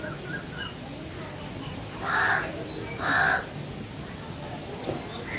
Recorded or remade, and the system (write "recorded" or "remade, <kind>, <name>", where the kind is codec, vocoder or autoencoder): recorded